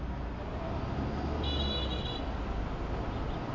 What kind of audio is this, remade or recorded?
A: recorded